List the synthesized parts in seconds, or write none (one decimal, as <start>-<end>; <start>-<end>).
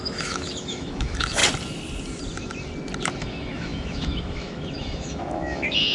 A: 0.0-1.4; 3.2-5.9